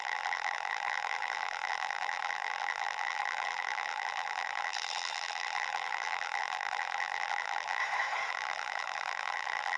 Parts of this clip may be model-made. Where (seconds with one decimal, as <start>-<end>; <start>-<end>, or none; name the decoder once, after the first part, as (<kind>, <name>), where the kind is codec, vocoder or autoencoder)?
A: 0.0-7.8 (vocoder, BigVGAN v2); 8.3-9.8